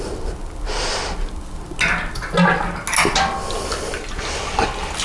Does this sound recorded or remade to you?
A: recorded